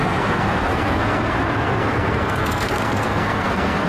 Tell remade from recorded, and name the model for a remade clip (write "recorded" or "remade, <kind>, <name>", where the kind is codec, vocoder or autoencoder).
remade, codec, SNAC